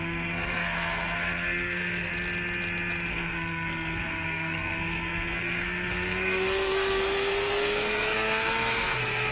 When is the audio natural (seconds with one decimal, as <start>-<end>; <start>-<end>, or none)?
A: 2.1-3.1